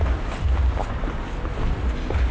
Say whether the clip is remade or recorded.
recorded